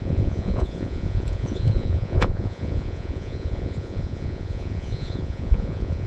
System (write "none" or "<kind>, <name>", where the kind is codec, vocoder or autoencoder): vocoder, Vocos